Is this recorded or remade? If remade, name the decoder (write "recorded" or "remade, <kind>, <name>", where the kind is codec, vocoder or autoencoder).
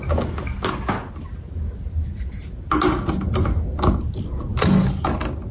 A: recorded